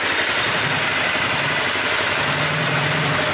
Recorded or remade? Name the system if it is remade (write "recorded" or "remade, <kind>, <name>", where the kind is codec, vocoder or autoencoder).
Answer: recorded